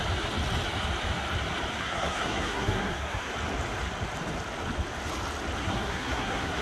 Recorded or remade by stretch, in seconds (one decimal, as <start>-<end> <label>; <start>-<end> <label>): 0.0-1.8 recorded; 1.8-3.3 remade; 3.3-5.6 recorded; 5.6-6.6 remade